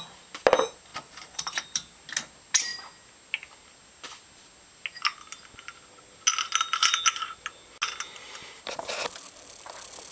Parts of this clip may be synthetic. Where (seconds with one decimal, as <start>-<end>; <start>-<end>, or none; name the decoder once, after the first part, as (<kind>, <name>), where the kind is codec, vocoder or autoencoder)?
0.9-2.0 (vocoder, BigVGAN v2)